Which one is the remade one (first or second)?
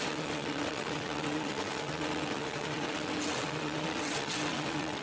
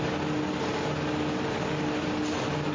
first